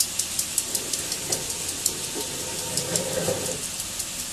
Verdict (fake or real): real